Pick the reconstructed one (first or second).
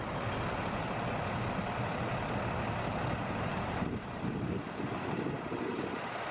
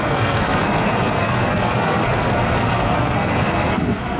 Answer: second